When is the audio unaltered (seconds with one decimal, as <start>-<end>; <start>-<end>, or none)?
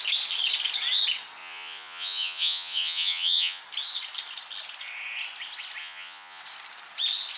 0.0-1.4; 3.6-5.8; 6.4-7.4